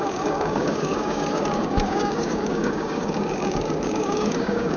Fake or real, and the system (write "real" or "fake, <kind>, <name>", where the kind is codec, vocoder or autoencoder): fake, codec, DAC